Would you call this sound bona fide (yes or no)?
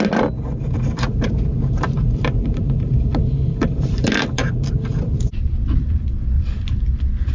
yes